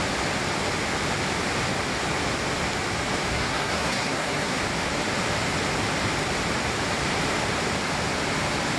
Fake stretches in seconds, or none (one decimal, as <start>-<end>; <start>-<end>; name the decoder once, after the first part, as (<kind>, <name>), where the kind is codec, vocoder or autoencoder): 3.3-4.6 (codec, SNAC)